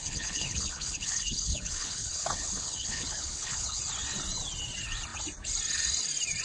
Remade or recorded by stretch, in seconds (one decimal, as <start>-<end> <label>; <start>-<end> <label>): 0.0-3.8 remade; 3.8-6.4 recorded